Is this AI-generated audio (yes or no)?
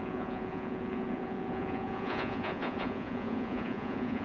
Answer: yes